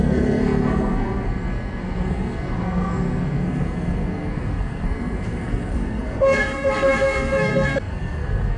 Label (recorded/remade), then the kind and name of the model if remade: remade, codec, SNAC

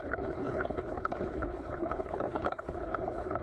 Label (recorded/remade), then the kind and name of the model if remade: remade, codec, HILCodec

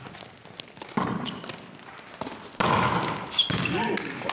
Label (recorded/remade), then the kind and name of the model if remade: recorded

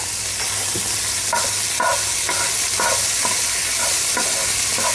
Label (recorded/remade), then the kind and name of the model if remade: recorded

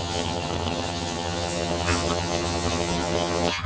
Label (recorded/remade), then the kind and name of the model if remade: remade, vocoder, HiFi-GAN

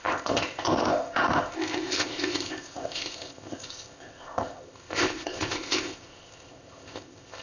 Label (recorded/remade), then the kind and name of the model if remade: remade, codec, ZipCodec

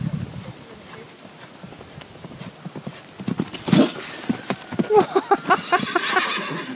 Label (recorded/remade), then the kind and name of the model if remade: recorded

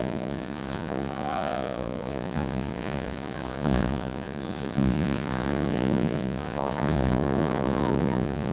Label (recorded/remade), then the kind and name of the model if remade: remade, vocoder, Vocos